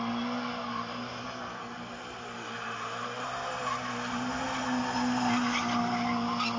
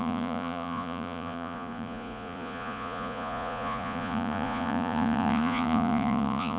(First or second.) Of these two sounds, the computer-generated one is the second